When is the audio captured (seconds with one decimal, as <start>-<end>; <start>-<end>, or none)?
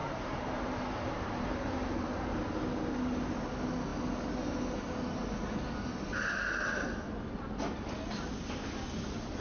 2.4-9.4